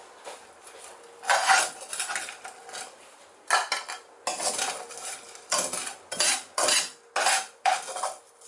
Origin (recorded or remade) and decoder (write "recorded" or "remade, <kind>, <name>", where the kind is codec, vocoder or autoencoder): recorded